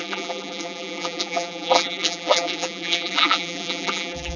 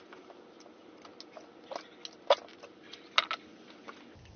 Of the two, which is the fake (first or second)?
first